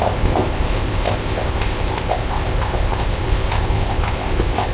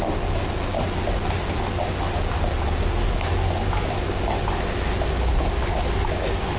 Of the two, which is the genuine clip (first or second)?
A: second